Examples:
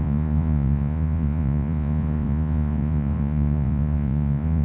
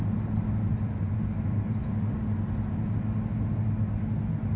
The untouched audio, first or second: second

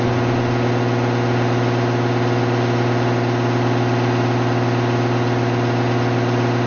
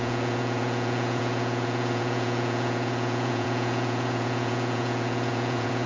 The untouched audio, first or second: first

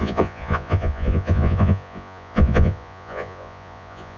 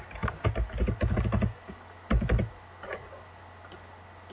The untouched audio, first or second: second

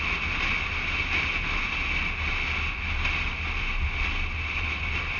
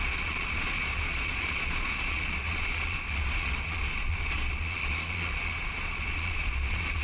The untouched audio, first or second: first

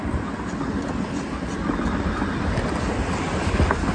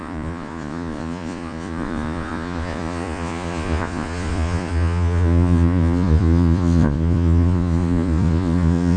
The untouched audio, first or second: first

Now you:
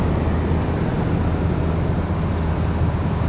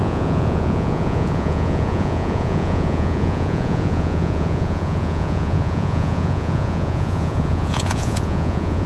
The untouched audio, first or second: first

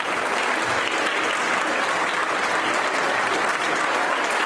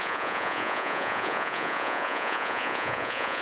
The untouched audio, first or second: first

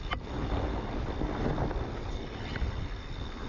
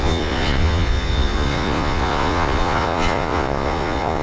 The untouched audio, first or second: first